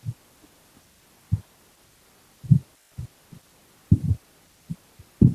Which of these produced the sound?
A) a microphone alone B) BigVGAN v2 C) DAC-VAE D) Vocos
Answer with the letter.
B